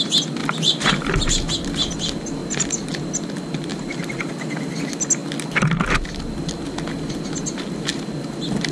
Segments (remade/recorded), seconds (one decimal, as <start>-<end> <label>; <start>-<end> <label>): 0.0-0.4 recorded; 0.4-1.3 remade; 1.3-2.4 recorded; 2.4-3.3 remade; 3.3-3.7 recorded; 3.7-4.3 remade; 4.3-8.7 recorded